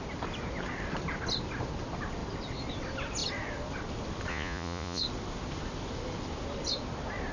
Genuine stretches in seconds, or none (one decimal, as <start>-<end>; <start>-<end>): 0.0-4.3; 5.0-7.3